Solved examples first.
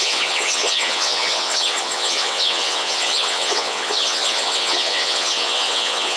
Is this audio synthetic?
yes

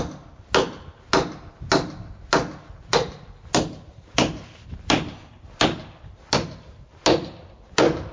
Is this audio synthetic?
no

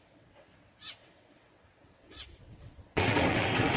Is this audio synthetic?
yes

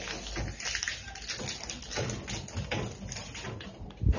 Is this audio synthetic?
no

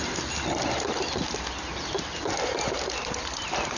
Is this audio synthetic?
no